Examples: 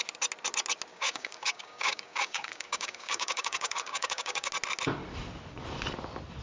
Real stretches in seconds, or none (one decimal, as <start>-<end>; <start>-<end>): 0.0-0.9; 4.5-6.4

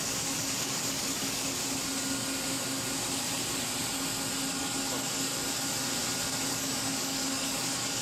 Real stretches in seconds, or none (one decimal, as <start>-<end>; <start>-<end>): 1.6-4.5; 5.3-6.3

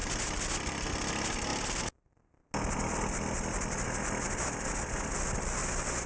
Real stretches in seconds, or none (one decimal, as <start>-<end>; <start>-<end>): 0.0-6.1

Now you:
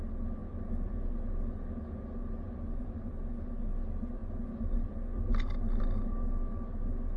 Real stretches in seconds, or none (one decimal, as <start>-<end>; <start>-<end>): 0.0-7.2